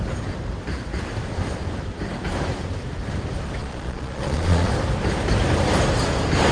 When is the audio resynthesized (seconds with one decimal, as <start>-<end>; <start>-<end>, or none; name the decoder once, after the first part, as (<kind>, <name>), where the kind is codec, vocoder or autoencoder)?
3.6-4.7 (vocoder, Vocos)